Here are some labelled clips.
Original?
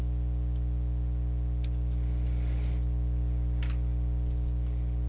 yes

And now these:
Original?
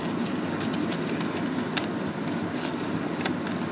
yes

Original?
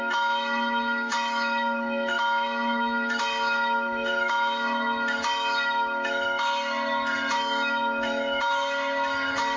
no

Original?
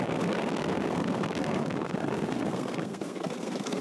no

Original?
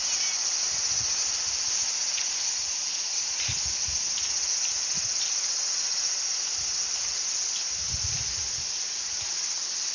yes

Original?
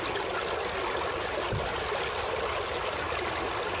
yes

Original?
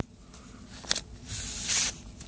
yes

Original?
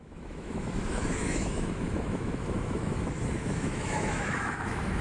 no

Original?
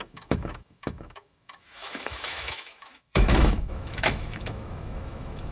no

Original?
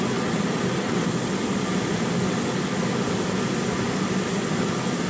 yes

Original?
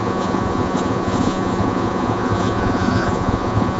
no